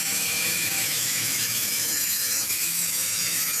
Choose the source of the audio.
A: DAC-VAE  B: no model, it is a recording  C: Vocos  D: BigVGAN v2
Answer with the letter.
A